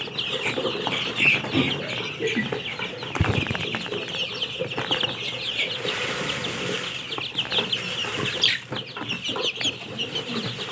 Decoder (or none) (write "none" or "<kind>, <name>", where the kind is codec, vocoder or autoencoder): none